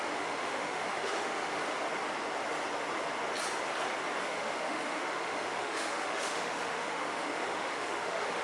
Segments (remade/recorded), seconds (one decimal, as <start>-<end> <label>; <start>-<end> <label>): 0.0-1.6 remade; 1.6-4.2 recorded; 4.2-8.4 remade

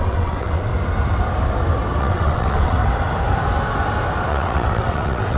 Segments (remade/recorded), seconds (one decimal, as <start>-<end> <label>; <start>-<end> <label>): 0.0-0.7 remade; 0.7-2.0 recorded; 2.0-2.8 remade; 2.8-4.3 recorded; 4.3-5.4 remade

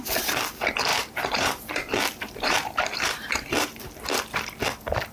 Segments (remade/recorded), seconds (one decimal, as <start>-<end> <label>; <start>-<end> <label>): 0.0-0.9 recorded; 0.9-4.0 remade; 4.0-5.1 recorded

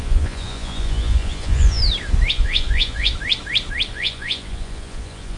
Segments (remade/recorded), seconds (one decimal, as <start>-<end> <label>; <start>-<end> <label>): 0.0-1.8 remade; 1.8-2.3 recorded; 2.3-3.1 remade; 3.1-3.9 recorded; 3.9-5.4 remade

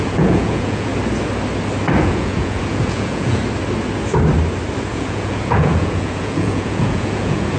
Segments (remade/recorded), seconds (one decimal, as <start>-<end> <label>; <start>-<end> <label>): 0.0-0.9 remade; 0.9-2.0 recorded; 2.0-3.4 remade; 3.4-4.9 recorded; 4.9-7.6 remade

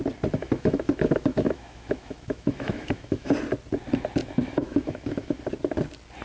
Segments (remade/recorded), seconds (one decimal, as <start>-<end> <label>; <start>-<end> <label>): 0.0-0.4 recorded; 0.4-3.3 remade; 3.3-4.2 recorded; 4.2-5.4 remade; 5.4-6.2 recorded